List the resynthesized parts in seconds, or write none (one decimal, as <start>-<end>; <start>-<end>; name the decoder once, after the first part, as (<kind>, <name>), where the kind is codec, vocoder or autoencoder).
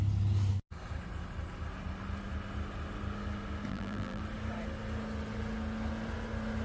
3.7-4.2 (vocoder, BigVGAN v2)